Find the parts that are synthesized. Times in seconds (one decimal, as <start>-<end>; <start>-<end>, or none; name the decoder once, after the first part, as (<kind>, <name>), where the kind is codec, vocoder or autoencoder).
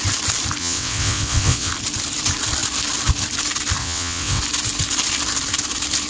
0.6-1.7 (vocoder, WaveNeXt); 3.8-4.4